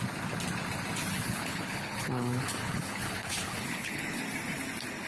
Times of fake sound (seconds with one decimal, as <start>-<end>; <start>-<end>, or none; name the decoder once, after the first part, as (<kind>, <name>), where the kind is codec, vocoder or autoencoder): 1.1-4.2 (codec, HILCodec)